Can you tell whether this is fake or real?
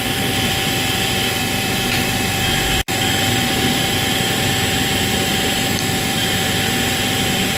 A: fake